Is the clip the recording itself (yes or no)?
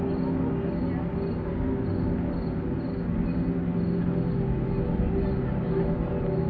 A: yes